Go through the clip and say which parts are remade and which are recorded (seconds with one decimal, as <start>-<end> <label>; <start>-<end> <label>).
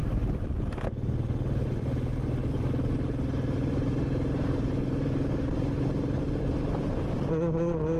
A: 0.0-0.9 remade; 0.9-2.4 recorded; 2.4-7.2 remade; 7.2-8.0 recorded